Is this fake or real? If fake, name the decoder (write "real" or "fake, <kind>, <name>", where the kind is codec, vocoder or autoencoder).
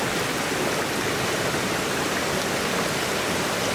real